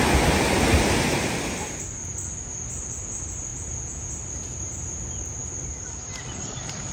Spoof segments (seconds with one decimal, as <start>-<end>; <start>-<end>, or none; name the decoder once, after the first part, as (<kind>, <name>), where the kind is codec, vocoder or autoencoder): 3.5-4.1 (vocoder, Vocos)